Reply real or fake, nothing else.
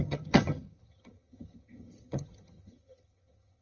fake